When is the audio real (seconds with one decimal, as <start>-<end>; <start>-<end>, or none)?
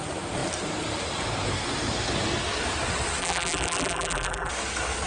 0.0-3.2; 4.5-5.1